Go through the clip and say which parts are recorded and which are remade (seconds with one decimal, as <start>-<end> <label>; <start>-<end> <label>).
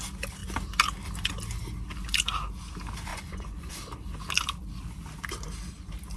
0.0-3.1 recorded; 3.1-3.7 remade; 3.7-6.2 recorded